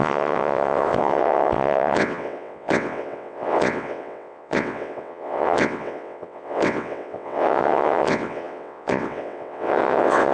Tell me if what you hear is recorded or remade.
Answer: remade